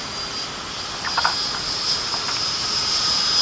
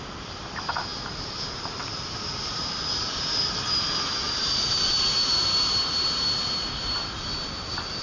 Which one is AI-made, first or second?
second